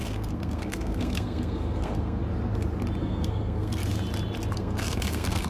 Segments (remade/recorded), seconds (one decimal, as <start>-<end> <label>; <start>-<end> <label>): 0.0-2.2 remade; 2.2-3.0 recorded; 3.0-3.8 remade; 3.8-4.5 recorded; 4.5-5.5 remade